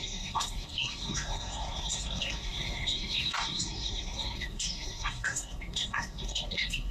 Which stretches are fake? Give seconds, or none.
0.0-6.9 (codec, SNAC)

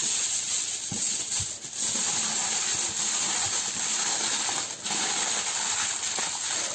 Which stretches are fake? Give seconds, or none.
0.0-1.4 (vocoder, WaveNeXt)

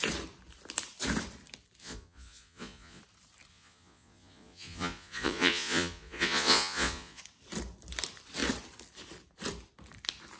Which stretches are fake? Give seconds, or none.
1.8-3.0 (vocoder, Vocos); 3.5-7.2

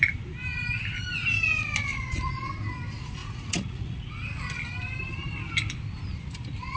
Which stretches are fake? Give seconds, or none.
1.9-2.5 (vocoder, Vocos); 3.2-4.1

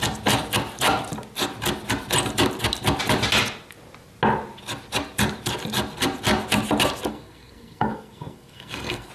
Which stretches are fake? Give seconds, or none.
7.1-9.1 (codec, SNAC)